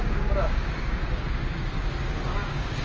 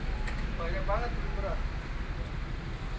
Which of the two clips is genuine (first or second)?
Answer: second